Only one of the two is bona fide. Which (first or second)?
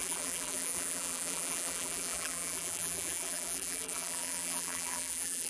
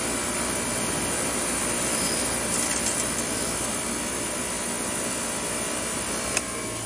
second